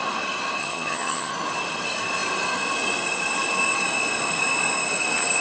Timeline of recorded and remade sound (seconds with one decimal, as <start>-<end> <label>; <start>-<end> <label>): 0.0-0.6 recorded; 0.6-1.3 remade; 1.3-5.4 recorded